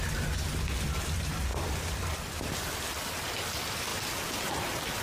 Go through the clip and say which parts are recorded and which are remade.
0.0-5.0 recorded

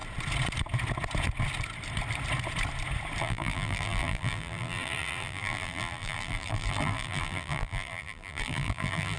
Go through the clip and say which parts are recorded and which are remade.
0.0-3.2 recorded; 3.2-9.2 remade

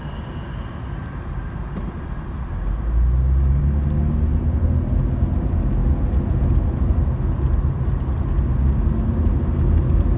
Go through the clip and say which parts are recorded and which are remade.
0.0-10.2 recorded

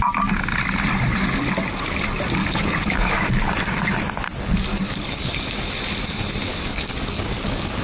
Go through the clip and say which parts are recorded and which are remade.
0.0-2.4 recorded; 2.4-3.3 remade; 3.3-4.7 recorded; 4.7-5.3 remade; 5.3-6.5 recorded; 6.5-7.8 remade

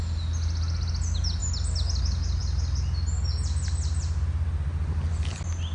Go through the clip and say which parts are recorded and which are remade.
0.0-5.7 recorded